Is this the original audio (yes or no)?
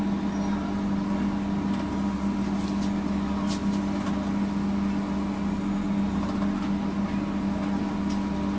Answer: yes